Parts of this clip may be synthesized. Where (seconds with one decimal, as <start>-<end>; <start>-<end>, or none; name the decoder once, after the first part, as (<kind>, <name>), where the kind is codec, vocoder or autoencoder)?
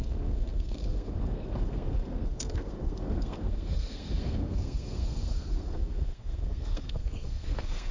0.0-7.9 (codec, SNAC)